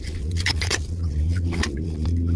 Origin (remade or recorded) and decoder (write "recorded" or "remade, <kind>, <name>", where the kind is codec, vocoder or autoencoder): remade, vocoder, Vocos